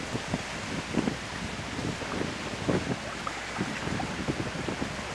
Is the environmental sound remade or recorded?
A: recorded